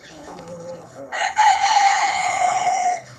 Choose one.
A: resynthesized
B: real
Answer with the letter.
A